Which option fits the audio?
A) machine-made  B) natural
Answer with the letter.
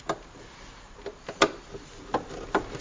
B